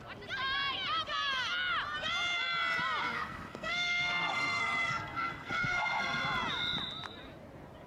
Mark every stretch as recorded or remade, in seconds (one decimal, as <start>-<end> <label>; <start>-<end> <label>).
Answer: 0.0-3.0 recorded; 3.0-6.2 remade; 6.2-7.9 recorded